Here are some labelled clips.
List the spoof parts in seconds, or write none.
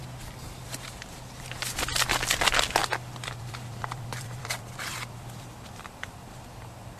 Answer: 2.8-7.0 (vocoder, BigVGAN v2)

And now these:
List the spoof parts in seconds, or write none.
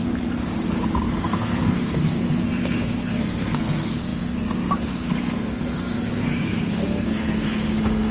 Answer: 1.1-8.1 (codec, SNAC)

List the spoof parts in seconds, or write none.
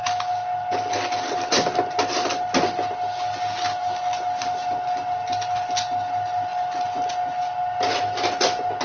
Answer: none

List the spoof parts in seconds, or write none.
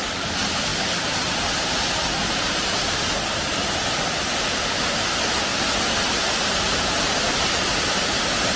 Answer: none